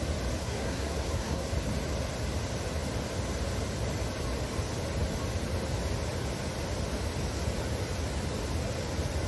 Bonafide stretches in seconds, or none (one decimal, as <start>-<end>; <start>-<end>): 0.0-0.4; 1.5-9.3